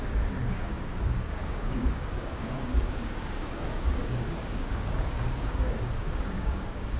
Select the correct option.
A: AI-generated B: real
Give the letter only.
A